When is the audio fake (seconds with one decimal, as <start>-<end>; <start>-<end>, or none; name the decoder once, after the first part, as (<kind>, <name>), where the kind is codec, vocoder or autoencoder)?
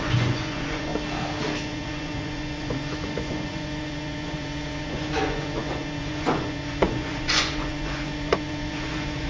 0.0-0.9 (vocoder, Vocos); 1.6-9.3